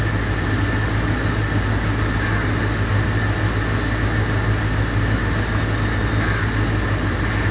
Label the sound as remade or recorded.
recorded